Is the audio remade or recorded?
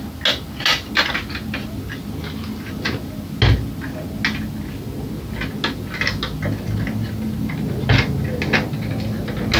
recorded